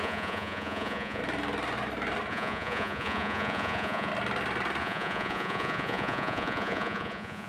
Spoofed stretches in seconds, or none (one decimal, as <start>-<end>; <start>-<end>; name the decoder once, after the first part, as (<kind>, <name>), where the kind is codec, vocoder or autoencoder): 0.0-1.2 (vocoder, Vocos); 2.3-4.1; 4.8-7.5